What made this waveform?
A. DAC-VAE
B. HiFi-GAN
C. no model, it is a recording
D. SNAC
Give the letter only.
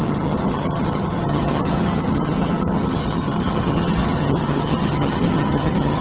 B